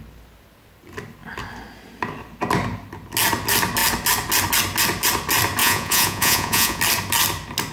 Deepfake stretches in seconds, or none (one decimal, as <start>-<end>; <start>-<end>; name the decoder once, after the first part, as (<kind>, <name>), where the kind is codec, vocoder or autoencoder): 5.6-6.8 (vocoder, Vocos)